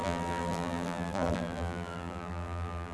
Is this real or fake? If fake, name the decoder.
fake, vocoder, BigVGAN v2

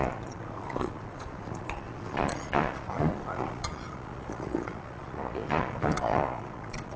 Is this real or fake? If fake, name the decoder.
fake, vocoder, Vocos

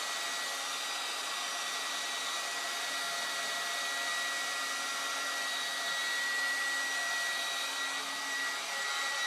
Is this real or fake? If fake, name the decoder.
real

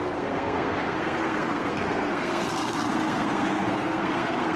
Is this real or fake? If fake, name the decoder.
fake, codec, SNAC